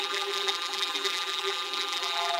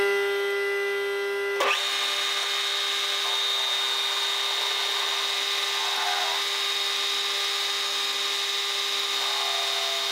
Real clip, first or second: second